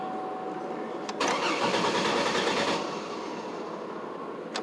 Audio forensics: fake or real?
real